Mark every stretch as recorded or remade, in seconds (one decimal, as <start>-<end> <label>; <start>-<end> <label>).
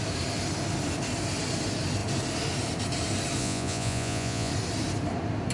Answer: 0.0-3.4 recorded; 3.4-4.5 remade; 4.5-5.5 recorded